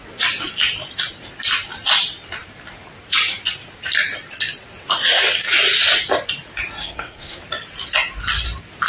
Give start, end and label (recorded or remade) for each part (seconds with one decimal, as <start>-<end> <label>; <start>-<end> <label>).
0.0-6.8 recorded; 6.8-7.4 remade; 7.4-8.9 recorded